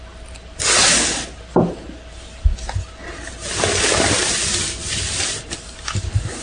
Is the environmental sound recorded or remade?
recorded